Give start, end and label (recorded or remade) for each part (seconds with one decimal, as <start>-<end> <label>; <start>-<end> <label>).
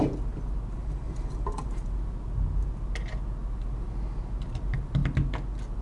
0.0-0.8 recorded; 0.8-1.9 remade; 1.9-5.8 recorded